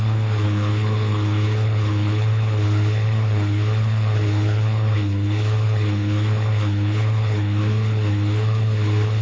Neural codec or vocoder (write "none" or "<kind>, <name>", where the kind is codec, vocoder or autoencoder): codec, HILCodec